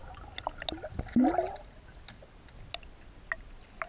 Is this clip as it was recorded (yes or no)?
yes